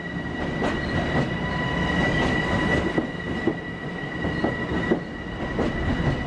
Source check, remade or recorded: recorded